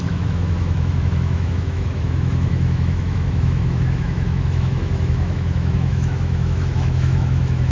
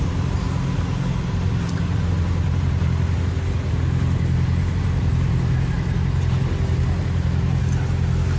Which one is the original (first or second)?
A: second